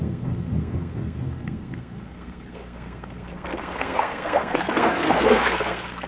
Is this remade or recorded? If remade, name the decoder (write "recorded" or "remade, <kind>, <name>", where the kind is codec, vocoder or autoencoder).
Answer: remade, codec, SNAC